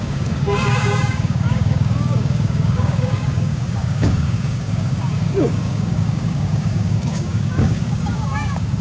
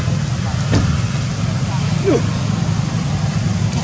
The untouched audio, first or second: second